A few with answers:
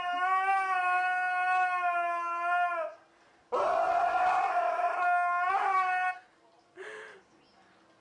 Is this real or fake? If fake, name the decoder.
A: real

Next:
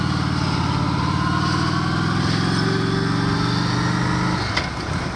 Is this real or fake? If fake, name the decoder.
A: real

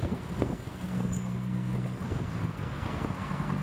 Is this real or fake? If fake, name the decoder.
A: fake, codec, SNAC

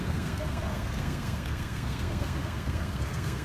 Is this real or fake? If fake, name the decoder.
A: fake, codec, SNAC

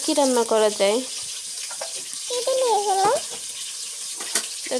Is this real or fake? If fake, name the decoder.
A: real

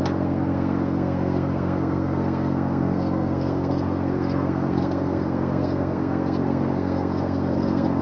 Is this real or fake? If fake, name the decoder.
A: fake, codec, SNAC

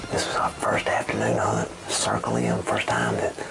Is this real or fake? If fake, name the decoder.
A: real